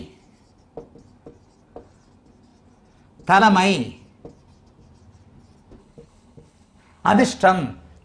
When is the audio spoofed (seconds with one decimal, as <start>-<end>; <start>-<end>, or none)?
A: 5.8-7.2